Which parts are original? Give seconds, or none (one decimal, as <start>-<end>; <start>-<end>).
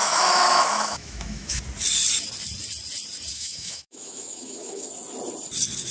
1.6-3.3; 4.9-5.9